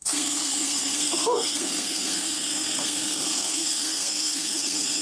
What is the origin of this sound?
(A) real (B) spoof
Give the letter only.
B